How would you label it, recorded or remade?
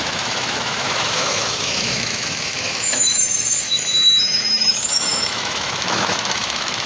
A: remade